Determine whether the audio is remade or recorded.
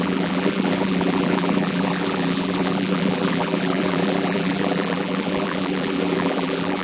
remade